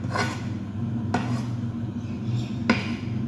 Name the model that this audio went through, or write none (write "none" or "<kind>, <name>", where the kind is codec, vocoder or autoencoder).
none